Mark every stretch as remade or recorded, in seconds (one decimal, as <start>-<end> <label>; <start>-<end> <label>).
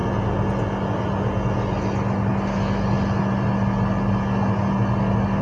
0.0-5.4 recorded